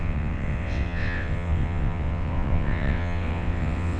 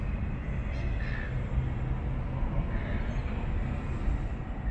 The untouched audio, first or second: second